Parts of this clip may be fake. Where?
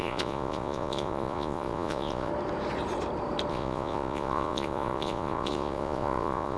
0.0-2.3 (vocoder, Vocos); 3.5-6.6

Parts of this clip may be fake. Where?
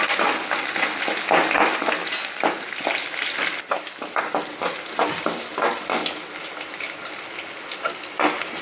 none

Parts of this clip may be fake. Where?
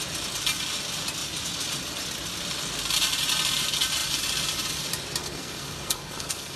5.2-6.6 (codec, SNAC)